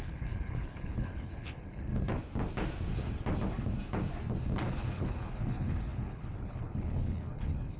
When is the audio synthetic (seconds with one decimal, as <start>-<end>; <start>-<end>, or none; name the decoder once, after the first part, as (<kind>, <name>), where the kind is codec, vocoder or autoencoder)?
0.0-1.9 (codec, HILCodec); 4.6-7.8

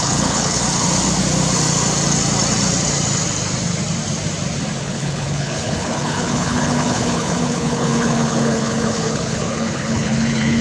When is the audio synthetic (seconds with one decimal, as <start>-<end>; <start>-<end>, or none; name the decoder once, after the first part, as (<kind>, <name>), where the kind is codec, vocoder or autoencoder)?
0.0-0.6 (codec, HILCodec); 4.8-10.6

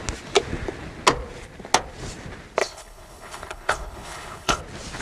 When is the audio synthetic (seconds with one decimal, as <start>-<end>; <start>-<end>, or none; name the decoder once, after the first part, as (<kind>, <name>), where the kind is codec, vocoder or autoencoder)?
2.6-4.6 (codec, HILCodec)

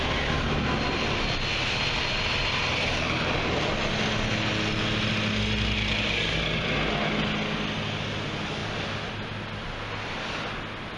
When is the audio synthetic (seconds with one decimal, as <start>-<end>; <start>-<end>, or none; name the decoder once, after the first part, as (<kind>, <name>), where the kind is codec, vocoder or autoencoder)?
none

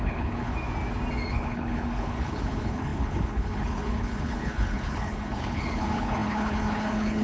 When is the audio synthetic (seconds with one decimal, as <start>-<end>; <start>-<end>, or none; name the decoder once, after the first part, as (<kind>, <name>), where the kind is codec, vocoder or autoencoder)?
0.0-0.5 (codec, HILCodec); 1.3-7.2

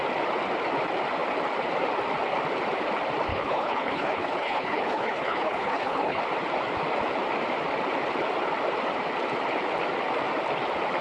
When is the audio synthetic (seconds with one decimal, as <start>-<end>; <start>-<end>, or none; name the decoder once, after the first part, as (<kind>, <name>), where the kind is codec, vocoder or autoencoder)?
3.3-6.2 (codec, HILCodec)

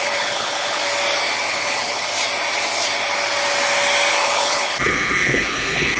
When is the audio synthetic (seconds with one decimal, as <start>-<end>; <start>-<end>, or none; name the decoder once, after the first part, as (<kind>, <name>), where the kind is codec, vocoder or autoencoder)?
0.0-0.8 (codec, HILCodec); 1.5-2.1; 4.1-6.0

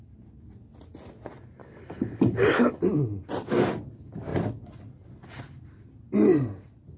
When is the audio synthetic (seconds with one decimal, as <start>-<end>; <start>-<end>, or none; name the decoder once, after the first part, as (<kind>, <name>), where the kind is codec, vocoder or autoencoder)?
1.6-2.8 (codec, HILCodec)